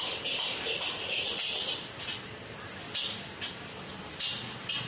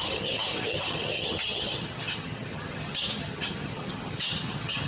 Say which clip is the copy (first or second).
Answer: second